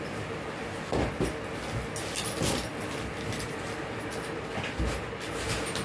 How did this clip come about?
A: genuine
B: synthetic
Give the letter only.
A